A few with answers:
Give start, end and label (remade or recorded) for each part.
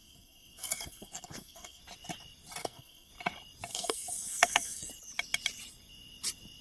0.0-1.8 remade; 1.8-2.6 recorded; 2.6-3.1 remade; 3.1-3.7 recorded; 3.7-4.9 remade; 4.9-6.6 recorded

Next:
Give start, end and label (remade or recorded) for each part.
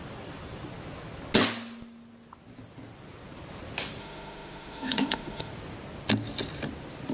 0.0-4.0 recorded; 4.0-5.5 remade; 5.5-7.1 recorded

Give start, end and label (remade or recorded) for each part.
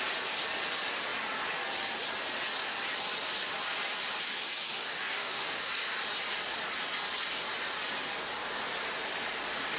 0.0-4.3 recorded; 4.3-5.7 remade; 5.7-9.8 recorded